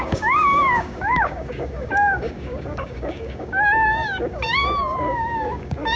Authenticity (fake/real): fake